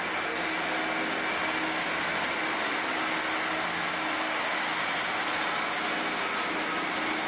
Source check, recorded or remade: recorded